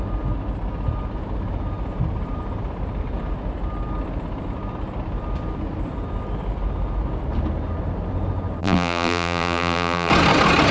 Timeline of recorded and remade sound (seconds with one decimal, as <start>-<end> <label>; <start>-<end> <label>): 0.0-8.6 recorded; 8.6-10.1 remade; 10.1-10.7 recorded